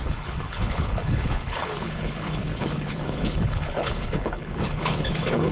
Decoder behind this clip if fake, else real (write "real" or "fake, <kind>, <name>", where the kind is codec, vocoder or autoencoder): fake, codec, HILCodec